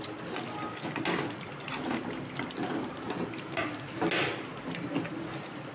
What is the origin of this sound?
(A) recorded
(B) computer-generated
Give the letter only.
A